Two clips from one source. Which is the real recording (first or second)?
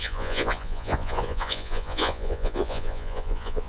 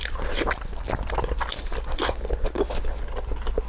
second